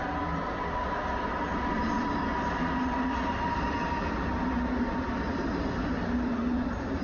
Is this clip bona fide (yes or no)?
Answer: yes